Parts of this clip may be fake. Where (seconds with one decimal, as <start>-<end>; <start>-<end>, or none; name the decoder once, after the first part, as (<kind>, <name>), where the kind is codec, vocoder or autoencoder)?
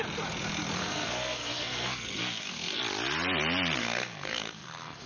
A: 0.8-2.8 (codec, SNAC); 3.8-5.1